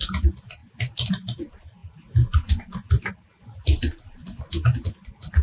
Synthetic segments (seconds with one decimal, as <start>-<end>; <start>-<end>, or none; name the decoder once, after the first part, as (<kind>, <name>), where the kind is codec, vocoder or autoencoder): none

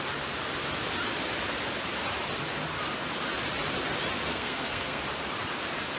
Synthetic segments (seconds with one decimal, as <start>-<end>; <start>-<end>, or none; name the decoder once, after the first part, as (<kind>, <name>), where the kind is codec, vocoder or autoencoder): 4.3-5.0 (codec, SNAC)

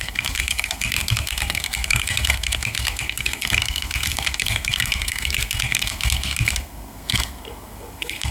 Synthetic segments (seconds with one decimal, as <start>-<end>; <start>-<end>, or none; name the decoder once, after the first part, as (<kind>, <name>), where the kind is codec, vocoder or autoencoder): 0.0-8.3 (codec, SNAC)

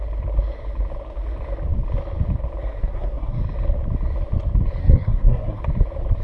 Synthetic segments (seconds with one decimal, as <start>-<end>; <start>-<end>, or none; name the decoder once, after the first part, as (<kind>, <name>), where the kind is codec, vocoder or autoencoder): 2.8-3.4 (codec, SNAC); 4.8-5.6